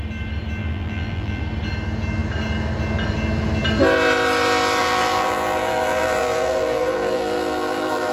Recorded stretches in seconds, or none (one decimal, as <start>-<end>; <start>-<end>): 0.0-0.6; 1.4-4.8